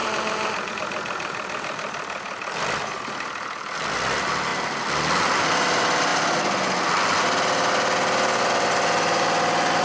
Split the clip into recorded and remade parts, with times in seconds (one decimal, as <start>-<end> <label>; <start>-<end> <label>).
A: 0.0-6.1 remade; 6.1-9.8 recorded